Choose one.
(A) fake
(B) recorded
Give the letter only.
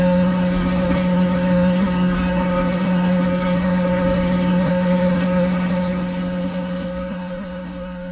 A